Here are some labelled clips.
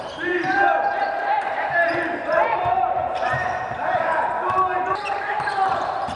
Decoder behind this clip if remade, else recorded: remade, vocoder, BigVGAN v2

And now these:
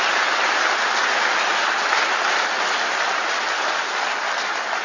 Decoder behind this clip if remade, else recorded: recorded